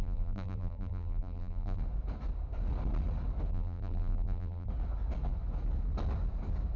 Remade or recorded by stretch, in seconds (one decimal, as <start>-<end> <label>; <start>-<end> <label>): 0.0-1.8 remade; 1.8-3.5 recorded; 3.5-4.7 remade; 4.7-6.8 recorded